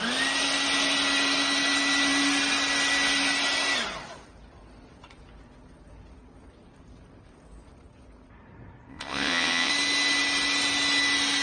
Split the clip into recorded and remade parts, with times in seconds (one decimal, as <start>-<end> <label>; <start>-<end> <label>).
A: 0.0-8.9 recorded; 8.9-9.7 remade; 9.7-11.4 recorded